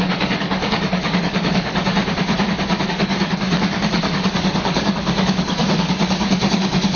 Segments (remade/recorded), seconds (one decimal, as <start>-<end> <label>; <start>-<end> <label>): 0.0-2.0 remade; 2.0-2.8 recorded; 2.8-7.0 remade